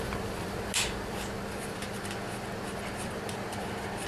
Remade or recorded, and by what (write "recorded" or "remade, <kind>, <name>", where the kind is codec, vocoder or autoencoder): recorded